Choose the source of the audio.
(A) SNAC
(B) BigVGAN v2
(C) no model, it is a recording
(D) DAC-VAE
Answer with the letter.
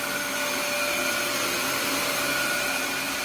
C